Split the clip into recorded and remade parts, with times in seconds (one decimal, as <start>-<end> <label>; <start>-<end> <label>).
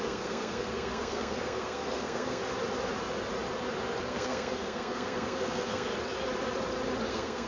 0.0-2.4 remade; 2.4-4.0 recorded; 4.0-5.9 remade; 5.9-7.1 recorded; 7.1-7.5 remade